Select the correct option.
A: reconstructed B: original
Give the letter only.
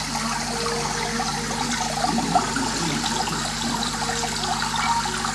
B